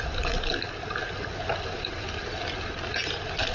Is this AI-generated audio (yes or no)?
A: no